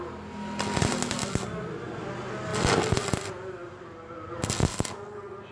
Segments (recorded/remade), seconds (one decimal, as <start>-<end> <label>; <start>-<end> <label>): 0.0-5.5 recorded